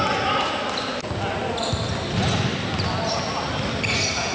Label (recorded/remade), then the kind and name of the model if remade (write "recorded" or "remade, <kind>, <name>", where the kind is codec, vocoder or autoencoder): recorded